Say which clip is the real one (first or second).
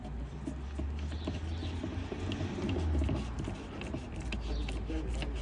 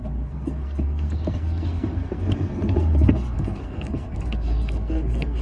first